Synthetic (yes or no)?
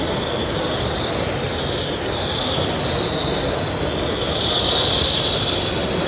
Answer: no